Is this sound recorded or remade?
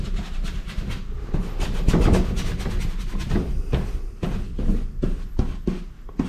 recorded